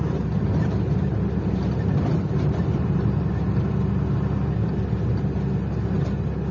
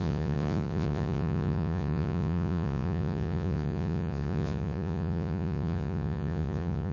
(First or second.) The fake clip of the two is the second